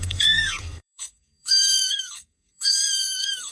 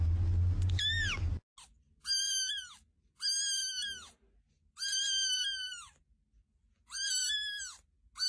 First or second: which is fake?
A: first